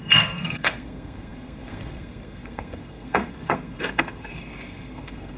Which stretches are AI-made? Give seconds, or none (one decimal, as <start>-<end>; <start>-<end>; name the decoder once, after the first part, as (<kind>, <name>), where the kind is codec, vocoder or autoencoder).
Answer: 0.0-5.4 (codec, SNAC)